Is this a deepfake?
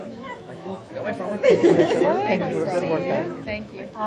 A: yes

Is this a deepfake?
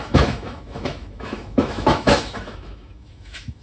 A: yes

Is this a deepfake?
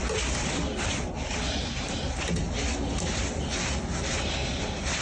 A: no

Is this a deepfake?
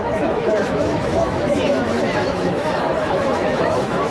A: yes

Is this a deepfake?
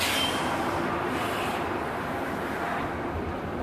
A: no